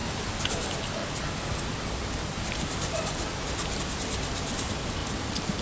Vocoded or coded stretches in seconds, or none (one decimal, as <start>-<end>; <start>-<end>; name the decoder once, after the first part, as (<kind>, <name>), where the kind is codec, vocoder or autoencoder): 0.0-0.5 (vocoder, BigVGAN v2); 1.0-3.8